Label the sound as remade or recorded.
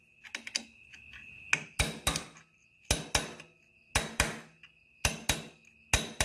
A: recorded